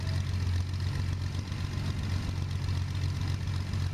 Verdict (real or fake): real